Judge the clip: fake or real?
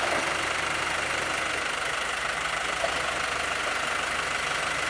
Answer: real